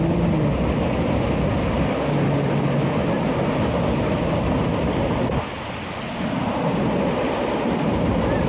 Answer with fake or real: real